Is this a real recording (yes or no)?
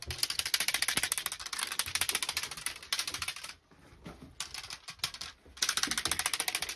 yes